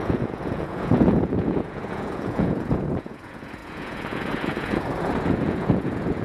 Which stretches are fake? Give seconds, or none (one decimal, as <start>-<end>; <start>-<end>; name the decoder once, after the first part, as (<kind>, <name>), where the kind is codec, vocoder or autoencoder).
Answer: 0.0-6.2 (vocoder, Vocos)